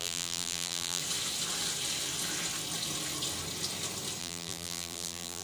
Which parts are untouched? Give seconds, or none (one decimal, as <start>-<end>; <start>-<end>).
1.0-4.2

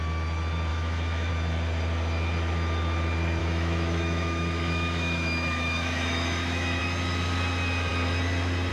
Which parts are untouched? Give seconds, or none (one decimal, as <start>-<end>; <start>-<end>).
0.0-0.7; 1.3-3.4; 6.8-8.7

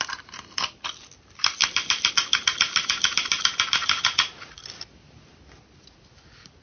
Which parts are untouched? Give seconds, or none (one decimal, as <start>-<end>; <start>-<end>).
0.0-3.8; 4.6-6.6

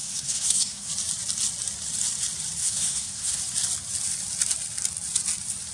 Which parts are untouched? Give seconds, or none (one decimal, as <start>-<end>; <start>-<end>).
0.9-2.6; 3.4-5.7

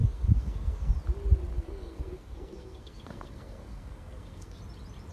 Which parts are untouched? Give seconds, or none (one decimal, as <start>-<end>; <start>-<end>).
0.9-1.5; 4.6-5.1